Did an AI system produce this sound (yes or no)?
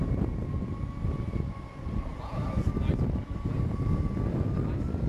no